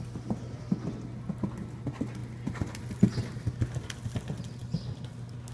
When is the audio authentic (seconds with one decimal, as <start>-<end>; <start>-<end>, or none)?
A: 0.0-5.5